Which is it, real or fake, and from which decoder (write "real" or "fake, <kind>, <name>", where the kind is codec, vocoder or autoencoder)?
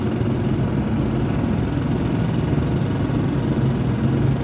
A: real